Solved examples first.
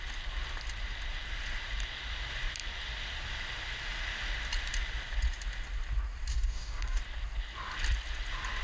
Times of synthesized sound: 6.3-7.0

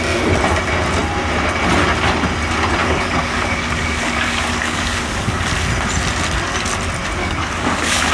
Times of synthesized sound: 2.8-5.4; 7.2-8.1

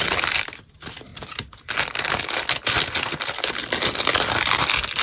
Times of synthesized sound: none

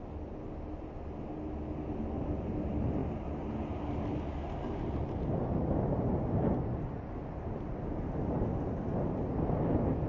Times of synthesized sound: none

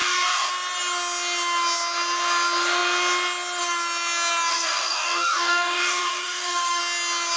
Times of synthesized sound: 0.0-0.5; 4.5-6.8

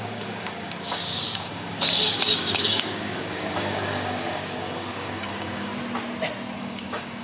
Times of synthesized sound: 0.0-5.7; 6.6-7.2